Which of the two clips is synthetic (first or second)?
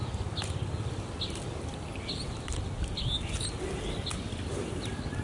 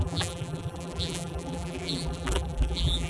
second